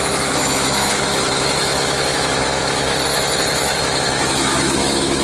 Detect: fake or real fake